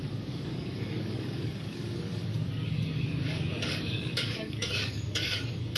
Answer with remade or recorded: remade